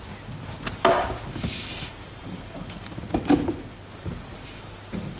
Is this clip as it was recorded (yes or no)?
yes